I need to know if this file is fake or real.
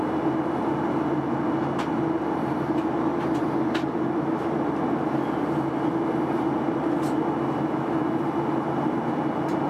real